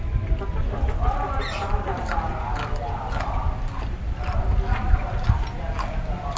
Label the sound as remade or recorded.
recorded